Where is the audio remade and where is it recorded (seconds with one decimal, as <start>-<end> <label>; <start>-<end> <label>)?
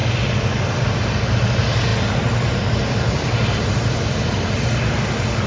0.0-5.5 recorded